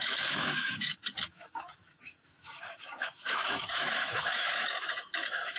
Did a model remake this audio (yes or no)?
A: yes